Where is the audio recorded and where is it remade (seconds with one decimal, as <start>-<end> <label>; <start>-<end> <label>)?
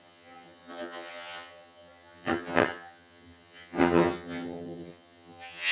0.0-5.7 remade